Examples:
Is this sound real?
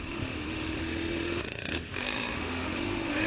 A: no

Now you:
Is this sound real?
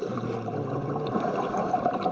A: yes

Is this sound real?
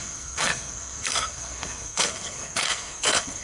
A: no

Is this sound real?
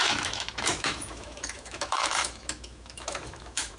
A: no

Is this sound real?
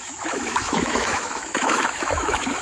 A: no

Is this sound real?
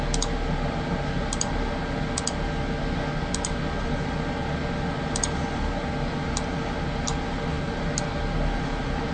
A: yes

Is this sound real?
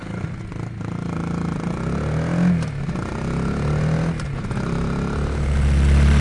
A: yes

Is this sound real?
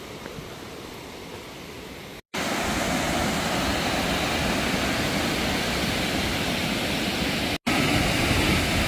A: yes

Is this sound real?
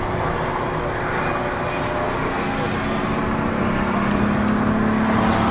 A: yes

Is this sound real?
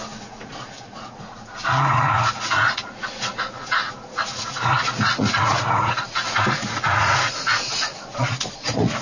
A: no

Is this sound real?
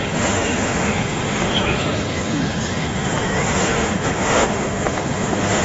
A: no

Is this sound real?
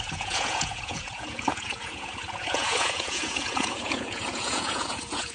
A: no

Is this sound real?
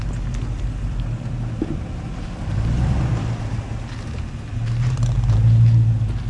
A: yes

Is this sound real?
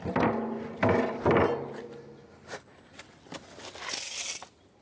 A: yes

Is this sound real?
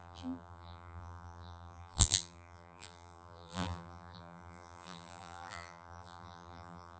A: no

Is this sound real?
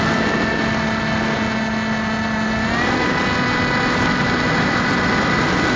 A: yes